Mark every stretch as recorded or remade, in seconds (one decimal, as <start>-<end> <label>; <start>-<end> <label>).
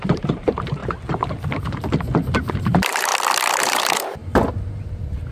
0.0-0.8 remade; 0.8-2.5 recorded; 2.5-3.1 remade; 3.1-3.6 recorded; 3.6-4.2 remade; 4.2-5.3 recorded